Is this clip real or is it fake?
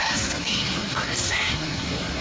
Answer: fake